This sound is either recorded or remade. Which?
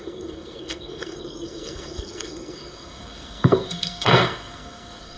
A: remade